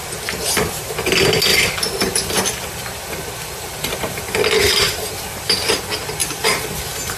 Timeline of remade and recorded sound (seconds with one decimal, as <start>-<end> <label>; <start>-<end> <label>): 0.0-1.5 recorded; 1.5-5.8 remade; 5.8-6.2 recorded; 6.2-6.8 remade; 6.8-7.2 recorded